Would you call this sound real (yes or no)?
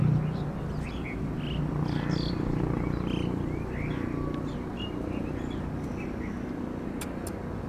yes